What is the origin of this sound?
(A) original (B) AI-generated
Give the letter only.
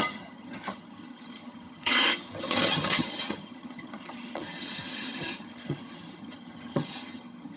B